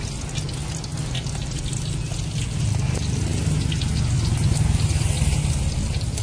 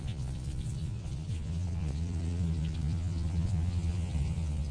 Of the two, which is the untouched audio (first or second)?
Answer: first